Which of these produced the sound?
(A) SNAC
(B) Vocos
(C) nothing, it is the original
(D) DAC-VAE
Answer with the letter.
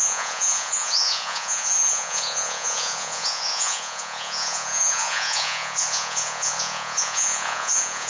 B